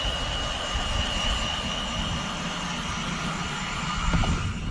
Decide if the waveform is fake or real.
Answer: real